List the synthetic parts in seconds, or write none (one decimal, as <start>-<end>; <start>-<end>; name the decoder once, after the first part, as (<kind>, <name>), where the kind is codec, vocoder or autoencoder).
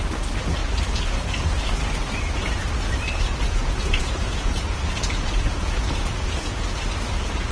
3.3-6.8 (vocoder, Vocos)